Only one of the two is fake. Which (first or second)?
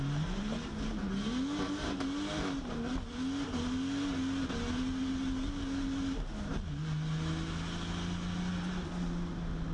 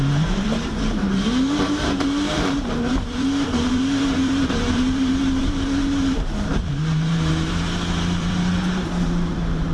second